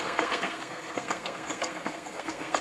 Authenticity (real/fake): fake